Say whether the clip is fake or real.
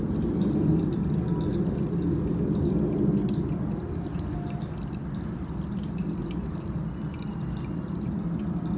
real